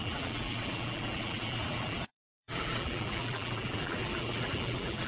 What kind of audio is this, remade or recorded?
remade